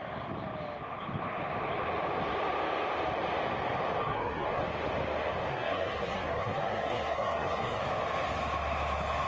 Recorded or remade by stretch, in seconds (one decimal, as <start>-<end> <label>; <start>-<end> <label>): 0.0-4.0 recorded; 4.0-4.6 remade; 4.6-5.5 recorded; 5.5-7.8 remade; 7.8-9.3 recorded